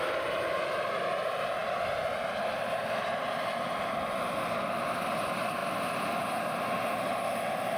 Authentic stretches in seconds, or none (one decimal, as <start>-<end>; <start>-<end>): 0.0-7.8